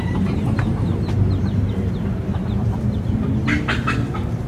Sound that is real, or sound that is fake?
fake